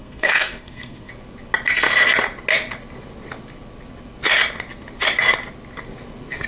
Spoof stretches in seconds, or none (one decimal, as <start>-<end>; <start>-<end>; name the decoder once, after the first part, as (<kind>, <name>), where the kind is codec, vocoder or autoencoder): 0.0-1.1 (codec, SNAC)